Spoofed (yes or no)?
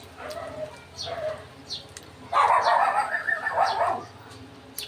no